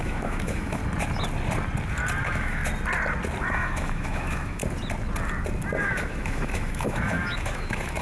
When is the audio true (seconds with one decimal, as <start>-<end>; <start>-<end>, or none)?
0.8-2.2; 2.6-3.4; 4.6-5.8